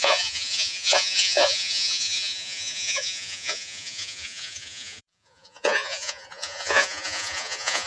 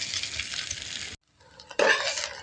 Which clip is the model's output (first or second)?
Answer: first